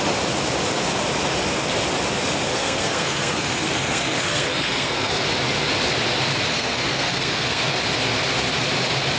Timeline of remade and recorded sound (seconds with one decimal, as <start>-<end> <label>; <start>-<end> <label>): 0.0-2.5 recorded; 2.5-5.2 remade; 5.2-6.5 recorded; 6.5-7.6 remade; 7.6-9.2 recorded